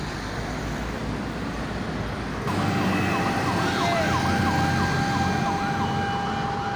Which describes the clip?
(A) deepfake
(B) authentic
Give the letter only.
B